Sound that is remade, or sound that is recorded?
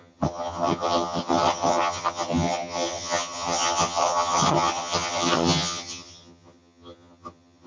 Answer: remade